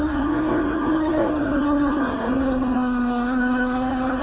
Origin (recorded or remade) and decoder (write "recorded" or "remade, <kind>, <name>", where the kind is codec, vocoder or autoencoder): remade, codec, SNAC